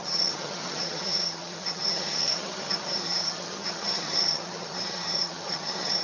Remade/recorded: remade